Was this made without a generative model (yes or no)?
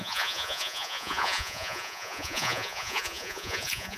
no